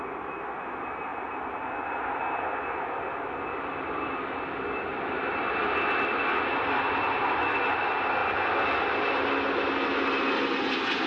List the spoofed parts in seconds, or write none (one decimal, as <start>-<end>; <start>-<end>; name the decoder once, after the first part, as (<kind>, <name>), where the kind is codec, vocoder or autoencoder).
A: none